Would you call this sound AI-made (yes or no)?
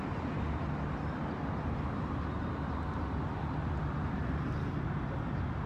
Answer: no